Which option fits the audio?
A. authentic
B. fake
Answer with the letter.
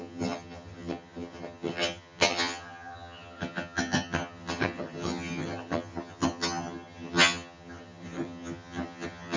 B